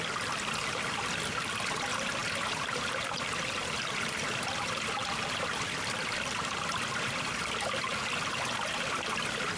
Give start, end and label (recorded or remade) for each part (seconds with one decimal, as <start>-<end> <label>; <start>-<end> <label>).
0.0-2.2 recorded; 2.2-3.4 remade; 3.4-5.0 recorded; 5.0-7.4 remade; 7.4-9.6 recorded

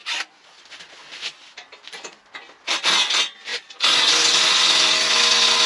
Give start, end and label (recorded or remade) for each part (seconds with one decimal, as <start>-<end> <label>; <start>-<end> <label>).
0.0-0.6 remade; 0.6-3.5 recorded; 3.5-4.1 remade; 4.1-5.7 recorded

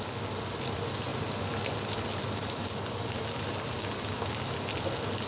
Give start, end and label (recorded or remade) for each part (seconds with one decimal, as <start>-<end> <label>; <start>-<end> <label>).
0.0-1.1 recorded; 1.1-4.3 remade; 4.3-5.3 recorded

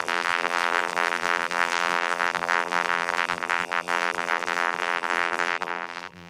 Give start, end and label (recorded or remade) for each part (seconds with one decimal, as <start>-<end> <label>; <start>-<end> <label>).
0.0-6.3 remade

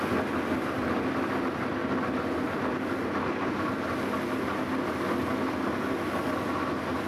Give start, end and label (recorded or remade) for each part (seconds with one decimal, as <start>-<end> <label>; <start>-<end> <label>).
0.0-7.1 recorded

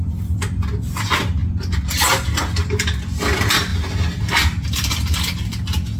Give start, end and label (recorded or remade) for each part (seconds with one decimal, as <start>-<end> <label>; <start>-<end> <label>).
0.0-6.0 recorded

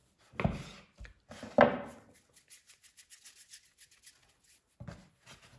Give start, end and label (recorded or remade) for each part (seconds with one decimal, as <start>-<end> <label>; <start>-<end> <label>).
0.0-5.6 recorded

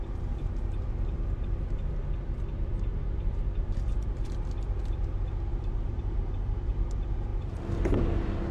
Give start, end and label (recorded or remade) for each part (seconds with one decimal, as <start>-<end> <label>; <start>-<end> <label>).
0.0-2.9 recorded; 2.9-4.3 remade; 4.3-5.5 recorded; 5.5-6.7 remade; 6.7-8.5 recorded